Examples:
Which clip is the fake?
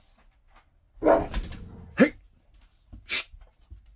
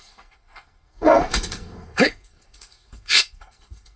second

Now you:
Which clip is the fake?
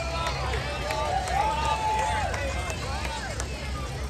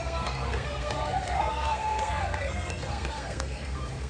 second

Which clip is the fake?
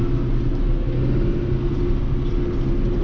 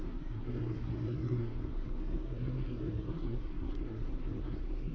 second